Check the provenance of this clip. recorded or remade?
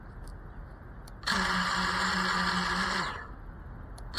recorded